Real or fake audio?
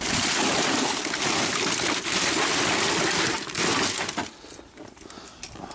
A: fake